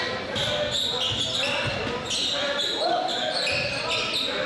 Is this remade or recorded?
recorded